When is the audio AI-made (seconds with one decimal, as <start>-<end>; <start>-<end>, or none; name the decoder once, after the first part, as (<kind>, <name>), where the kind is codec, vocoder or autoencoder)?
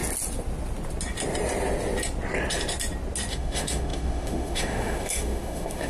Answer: 3.3-5.9 (autoencoder, DAC-VAE)